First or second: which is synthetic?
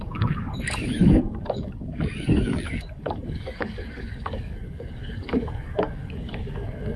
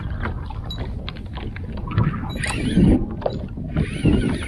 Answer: first